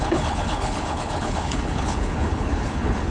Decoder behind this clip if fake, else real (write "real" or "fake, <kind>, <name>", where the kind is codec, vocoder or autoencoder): fake, codec, HILCodec